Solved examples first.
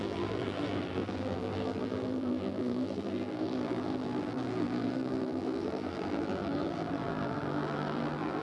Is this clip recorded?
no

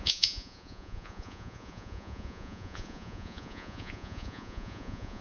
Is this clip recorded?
no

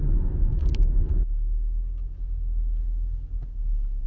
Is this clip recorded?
yes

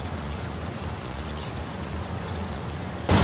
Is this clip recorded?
no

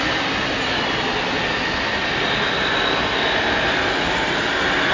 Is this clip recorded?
yes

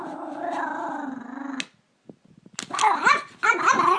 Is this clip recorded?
yes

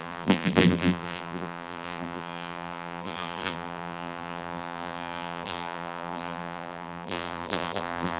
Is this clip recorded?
no